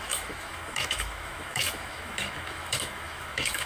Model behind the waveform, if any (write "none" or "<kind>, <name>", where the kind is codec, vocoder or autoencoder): autoencoder, DAC-VAE